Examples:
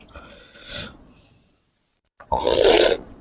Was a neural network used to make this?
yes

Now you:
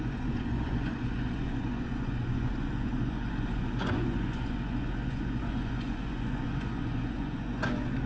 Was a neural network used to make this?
yes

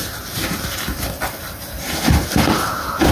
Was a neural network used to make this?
no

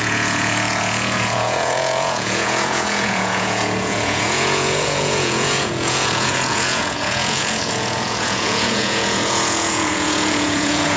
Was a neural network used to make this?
yes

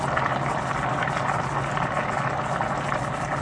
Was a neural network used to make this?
no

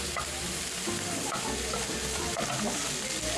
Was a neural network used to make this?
no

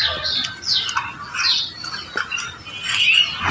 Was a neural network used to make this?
no